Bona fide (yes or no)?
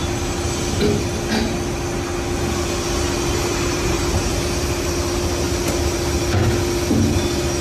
yes